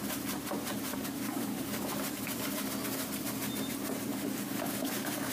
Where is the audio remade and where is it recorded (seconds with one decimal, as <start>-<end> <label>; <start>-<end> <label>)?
0.0-0.9 recorded; 0.9-2.2 remade; 2.2-4.1 recorded; 4.1-5.3 remade